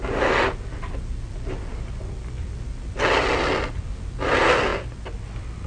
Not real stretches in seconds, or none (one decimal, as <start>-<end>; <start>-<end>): none